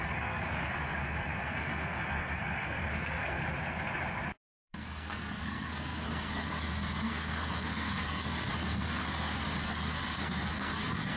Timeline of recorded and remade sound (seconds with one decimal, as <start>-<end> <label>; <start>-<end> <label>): 0.0-3.4 remade; 3.4-4.5 recorded; 4.5-11.2 remade